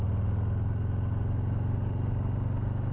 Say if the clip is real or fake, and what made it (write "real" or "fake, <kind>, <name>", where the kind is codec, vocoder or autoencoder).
real